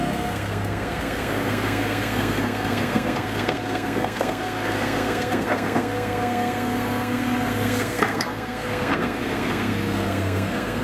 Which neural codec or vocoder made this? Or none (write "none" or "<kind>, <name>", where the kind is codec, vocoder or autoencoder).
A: codec, SNAC